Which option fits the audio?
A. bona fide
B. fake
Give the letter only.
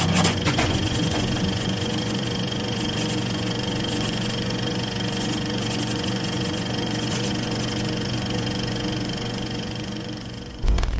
B